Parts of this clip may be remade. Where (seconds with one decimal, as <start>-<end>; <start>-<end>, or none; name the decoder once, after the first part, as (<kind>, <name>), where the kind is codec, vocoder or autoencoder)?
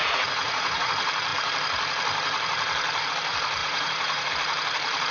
0.0-0.9 (vocoder, Vocos); 3.6-4.3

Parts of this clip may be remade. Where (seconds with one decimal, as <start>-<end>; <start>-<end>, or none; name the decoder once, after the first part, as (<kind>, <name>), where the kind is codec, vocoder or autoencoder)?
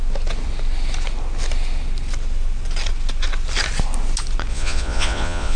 4.5-5.6 (vocoder, Vocos)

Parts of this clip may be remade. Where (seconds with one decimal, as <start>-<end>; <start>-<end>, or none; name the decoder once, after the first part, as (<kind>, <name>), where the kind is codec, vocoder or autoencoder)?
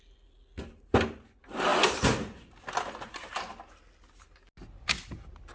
none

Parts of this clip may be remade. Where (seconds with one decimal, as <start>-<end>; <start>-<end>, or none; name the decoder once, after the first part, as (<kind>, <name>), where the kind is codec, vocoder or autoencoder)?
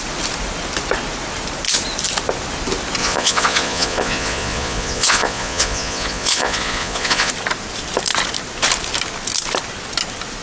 3.0-7.3 (vocoder, Vocos)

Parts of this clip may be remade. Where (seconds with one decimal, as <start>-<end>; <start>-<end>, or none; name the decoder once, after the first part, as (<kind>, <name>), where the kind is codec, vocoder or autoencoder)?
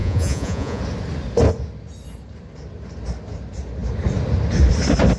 0.0-0.8 (vocoder, Vocos)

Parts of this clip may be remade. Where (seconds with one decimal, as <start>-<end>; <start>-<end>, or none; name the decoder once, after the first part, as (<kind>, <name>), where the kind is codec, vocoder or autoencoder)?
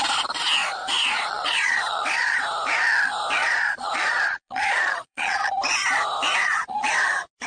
0.6-2.4 (vocoder, Vocos); 3.4-5.5; 6.4-6.9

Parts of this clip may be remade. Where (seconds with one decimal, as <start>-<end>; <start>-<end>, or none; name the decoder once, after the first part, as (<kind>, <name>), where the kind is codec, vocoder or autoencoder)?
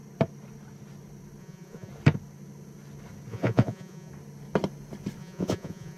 1.4-1.9 (vocoder, Vocos); 3.3-4.1; 5.2-6.0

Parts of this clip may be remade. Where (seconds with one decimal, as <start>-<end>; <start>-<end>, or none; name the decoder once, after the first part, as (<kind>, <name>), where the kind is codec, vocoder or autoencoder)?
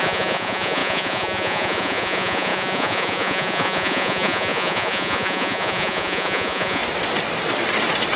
0.0-6.8 (vocoder, Vocos)